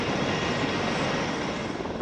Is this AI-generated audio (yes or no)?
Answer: no